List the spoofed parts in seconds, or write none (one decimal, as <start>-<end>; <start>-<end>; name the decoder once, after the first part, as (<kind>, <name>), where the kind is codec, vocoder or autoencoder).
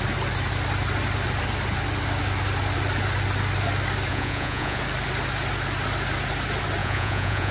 4.1-4.8 (vocoder, Vocos); 6.8-7.5